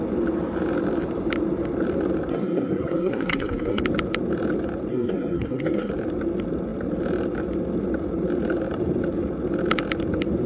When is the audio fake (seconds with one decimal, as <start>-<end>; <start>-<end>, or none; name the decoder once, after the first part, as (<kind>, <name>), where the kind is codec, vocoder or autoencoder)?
2.3-3.8 (codec, SNAC); 4.9-5.9